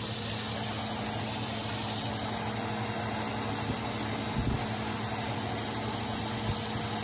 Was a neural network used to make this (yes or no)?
no